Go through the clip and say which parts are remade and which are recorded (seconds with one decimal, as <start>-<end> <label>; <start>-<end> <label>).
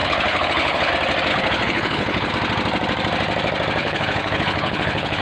0.0-0.9 remade; 0.9-1.3 recorded; 1.3-2.3 remade; 2.3-3.8 recorded; 3.8-5.2 remade